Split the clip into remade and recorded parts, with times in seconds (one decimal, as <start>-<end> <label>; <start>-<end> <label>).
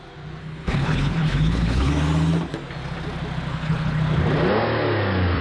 0.0-0.4 recorded; 0.4-1.9 remade; 1.9-3.5 recorded; 3.5-4.0 remade; 4.0-5.4 recorded